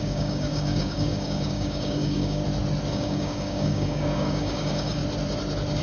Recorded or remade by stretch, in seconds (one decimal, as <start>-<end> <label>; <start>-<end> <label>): 0.0-2.4 remade; 2.4-2.9 recorded; 2.9-5.0 remade; 5.0-5.8 recorded